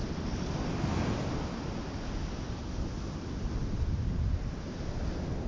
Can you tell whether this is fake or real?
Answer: real